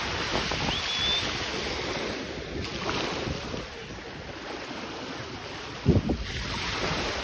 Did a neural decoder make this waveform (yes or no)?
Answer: no